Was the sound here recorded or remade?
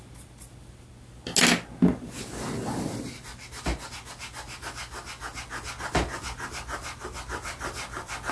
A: recorded